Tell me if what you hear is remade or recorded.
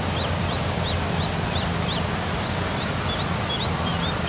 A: recorded